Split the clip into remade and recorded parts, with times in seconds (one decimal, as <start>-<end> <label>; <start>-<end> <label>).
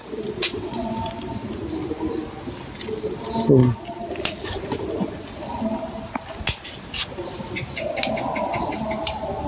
0.0-0.5 recorded; 0.5-1.1 remade; 1.1-9.5 recorded